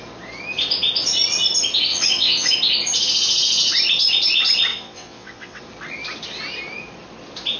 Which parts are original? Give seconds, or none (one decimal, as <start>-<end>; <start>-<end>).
0.0-1.9; 2.5-4.7; 5.6-7.6